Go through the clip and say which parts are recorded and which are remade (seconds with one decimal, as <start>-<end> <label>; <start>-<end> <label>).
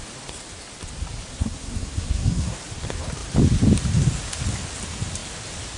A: 0.0-1.3 recorded; 1.3-2.6 remade; 2.6-5.8 recorded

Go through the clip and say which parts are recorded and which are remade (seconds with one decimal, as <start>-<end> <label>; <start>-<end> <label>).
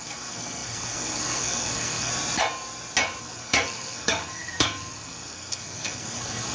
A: 0.0-2.1 remade; 2.1-3.2 recorded; 3.2-6.5 remade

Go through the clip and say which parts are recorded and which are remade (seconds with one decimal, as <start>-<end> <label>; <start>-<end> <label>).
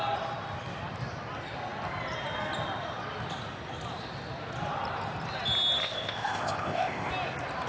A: 0.0-5.8 recorded; 5.8-7.1 remade; 7.1-7.7 recorded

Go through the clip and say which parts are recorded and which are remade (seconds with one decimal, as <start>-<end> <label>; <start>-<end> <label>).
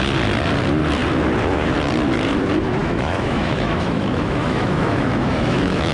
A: 0.0-2.8 recorded; 2.8-5.9 remade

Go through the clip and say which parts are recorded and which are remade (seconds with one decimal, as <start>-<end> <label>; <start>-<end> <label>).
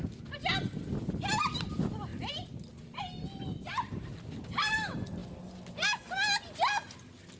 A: 0.0-7.4 recorded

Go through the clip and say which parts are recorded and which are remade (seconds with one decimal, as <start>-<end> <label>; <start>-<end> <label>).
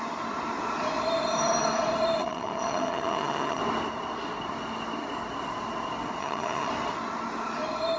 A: 0.0-2.2 recorded; 2.2-3.6 remade; 3.6-6.2 recorded; 6.2-6.7 remade; 6.7-8.0 recorded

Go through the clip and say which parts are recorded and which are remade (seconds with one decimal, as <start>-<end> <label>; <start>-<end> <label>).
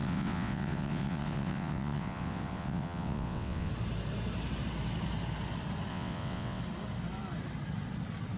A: 0.0-3.7 remade; 3.7-5.9 recorded; 5.9-6.6 remade; 6.6-8.4 recorded